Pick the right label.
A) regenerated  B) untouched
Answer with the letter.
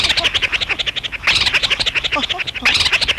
B